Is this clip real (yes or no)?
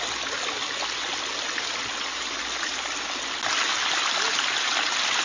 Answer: yes